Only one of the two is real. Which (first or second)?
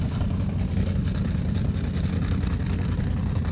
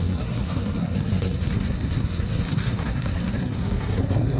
first